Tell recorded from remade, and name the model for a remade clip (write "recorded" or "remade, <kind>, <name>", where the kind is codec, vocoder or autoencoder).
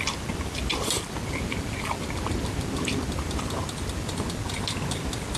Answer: recorded